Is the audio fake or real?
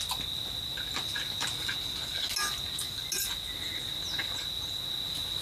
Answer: real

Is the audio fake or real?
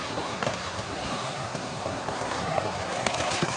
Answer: fake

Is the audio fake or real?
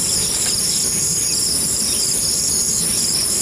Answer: fake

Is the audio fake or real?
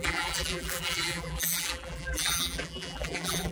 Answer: fake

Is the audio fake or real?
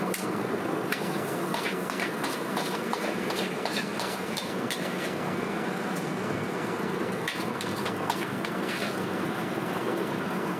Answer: fake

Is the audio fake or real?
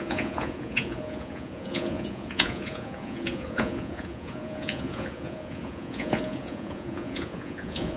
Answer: fake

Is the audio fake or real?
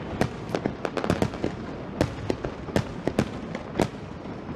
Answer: real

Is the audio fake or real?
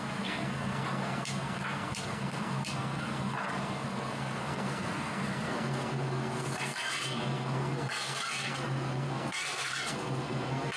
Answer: fake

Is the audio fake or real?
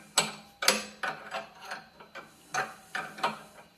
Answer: real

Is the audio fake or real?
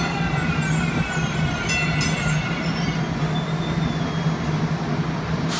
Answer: real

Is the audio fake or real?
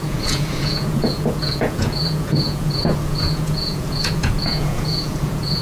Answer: fake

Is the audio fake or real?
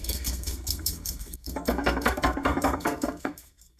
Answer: fake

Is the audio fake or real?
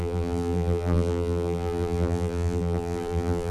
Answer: fake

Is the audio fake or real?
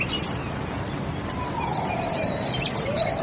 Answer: real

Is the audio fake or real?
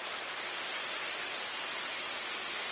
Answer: real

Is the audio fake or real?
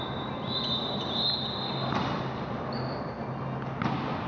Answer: real